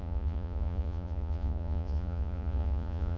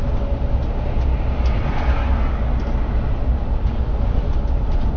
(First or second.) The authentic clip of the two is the second